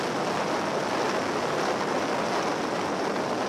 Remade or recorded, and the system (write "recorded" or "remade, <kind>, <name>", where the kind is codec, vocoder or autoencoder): recorded